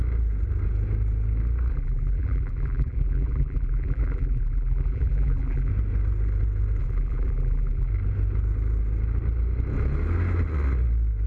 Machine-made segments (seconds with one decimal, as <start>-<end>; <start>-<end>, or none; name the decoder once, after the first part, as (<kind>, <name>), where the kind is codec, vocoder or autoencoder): 1.7-5.7 (vocoder, BigVGAN v2); 6.8-7.9